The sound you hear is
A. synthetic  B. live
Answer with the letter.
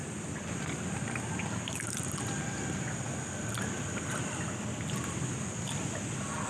B